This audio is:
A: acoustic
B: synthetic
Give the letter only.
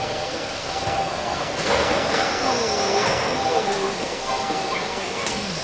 B